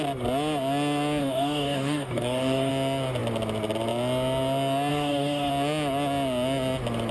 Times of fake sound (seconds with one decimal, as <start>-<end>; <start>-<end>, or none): 1.2-2.7; 4.9-5.5